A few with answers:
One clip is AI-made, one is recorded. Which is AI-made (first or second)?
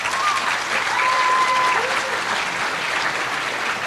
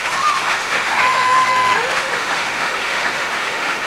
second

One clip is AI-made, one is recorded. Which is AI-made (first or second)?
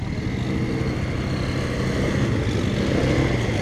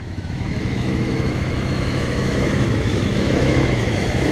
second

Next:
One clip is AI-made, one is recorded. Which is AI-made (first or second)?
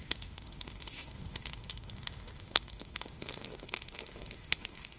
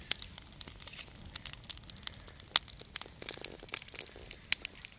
first